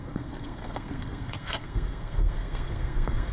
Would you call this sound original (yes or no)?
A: no